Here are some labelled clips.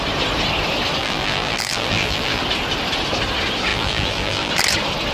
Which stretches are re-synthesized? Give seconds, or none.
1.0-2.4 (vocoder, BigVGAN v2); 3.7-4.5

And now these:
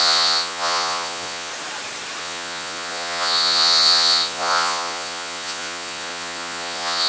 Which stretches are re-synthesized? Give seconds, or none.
0.0-1.5 (vocoder, Vocos); 2.2-7.1

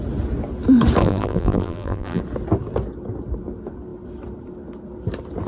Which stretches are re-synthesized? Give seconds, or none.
1.0-2.2 (vocoder, BigVGAN v2)